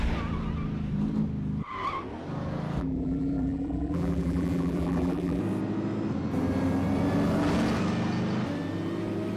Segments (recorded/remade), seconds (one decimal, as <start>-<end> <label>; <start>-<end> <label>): 0.0-2.8 recorded; 2.8-5.4 remade; 5.4-9.4 recorded